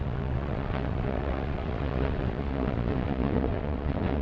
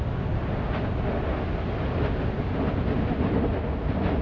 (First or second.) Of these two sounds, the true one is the second